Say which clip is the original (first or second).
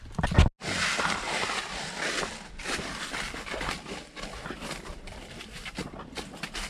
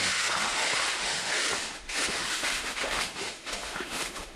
first